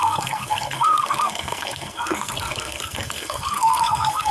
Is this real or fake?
fake